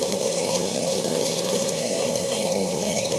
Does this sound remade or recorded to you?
remade